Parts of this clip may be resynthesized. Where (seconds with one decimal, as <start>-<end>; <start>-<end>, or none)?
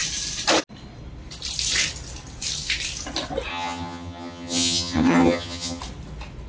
3.5-5.8